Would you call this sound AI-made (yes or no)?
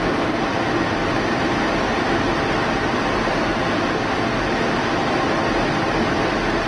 no